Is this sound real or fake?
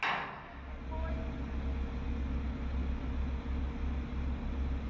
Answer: real